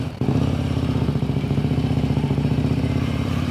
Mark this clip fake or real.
fake